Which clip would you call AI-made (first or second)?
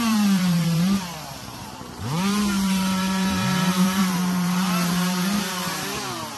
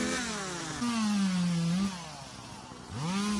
first